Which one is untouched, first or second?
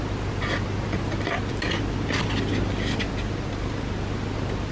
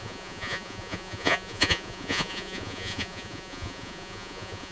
first